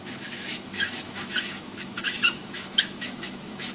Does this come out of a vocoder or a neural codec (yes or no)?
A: yes